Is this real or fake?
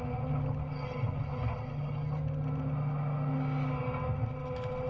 real